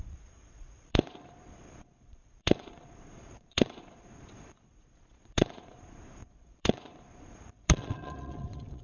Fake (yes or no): yes